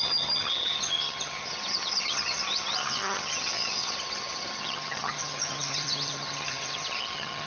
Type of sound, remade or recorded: remade